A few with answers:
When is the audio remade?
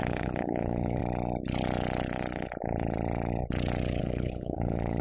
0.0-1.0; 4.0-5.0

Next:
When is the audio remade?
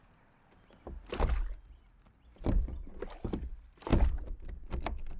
none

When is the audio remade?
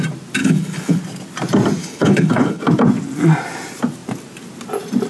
0.4-1.0; 1.8-2.6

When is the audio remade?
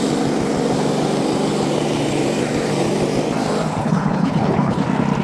3.8-4.8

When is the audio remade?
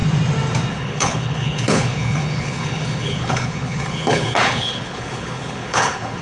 0.7-6.2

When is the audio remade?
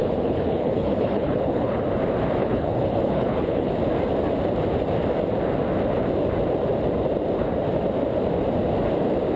0.0-1.8; 2.4-3.7